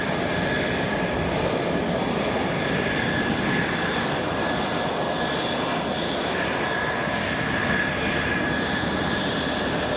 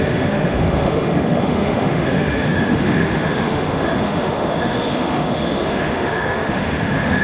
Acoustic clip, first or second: first